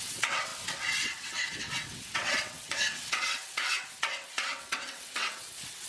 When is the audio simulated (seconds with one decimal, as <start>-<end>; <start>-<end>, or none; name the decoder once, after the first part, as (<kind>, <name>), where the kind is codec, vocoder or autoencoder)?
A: 0.0-5.9 (vocoder, WaveNeXt)